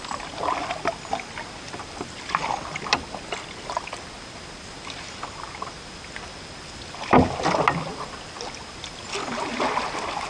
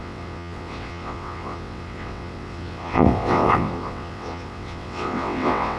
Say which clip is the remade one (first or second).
second